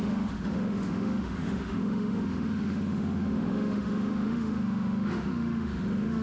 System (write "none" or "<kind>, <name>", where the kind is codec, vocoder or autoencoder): autoencoder, DAC-VAE